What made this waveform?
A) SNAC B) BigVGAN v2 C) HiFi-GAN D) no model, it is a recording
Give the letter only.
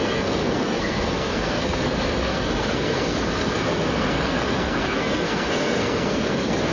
A